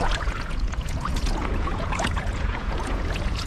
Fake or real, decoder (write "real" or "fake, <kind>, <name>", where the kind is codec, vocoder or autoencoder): fake, vocoder, Vocos